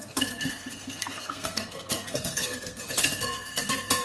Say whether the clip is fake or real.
fake